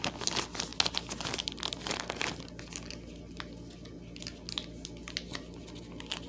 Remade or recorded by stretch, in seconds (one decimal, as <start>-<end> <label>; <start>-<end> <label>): 0.0-6.3 recorded